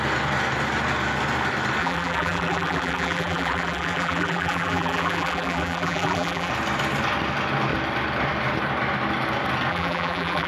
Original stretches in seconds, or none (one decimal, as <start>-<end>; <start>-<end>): 0.0-1.8; 6.5-9.7